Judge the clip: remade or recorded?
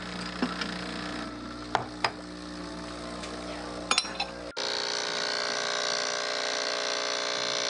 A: recorded